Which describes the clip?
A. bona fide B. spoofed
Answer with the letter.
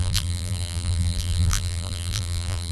B